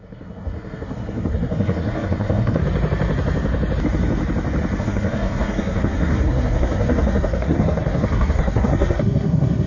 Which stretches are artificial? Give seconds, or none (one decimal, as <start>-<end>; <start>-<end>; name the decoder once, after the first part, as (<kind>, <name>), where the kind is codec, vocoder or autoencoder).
0.0-2.6 (codec, SNAC); 4.8-9.7